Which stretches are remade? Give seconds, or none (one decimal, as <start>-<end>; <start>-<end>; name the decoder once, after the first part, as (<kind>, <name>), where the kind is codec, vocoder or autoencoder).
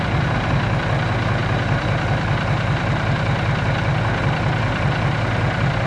none